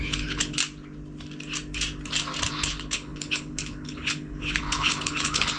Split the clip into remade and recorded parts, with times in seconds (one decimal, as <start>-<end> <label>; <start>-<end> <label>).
0.0-0.6 remade; 0.6-2.5 recorded; 2.5-5.6 remade